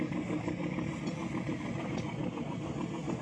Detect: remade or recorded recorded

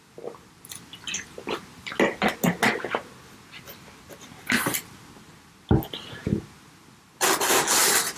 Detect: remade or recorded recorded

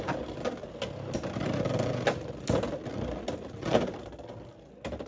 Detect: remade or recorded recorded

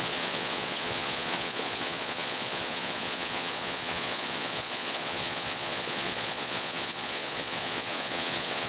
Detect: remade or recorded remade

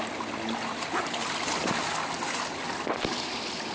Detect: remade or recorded recorded